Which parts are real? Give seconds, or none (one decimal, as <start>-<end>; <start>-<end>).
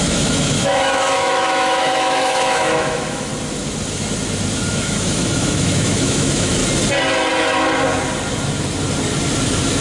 3.3-4.7; 6.6-9.8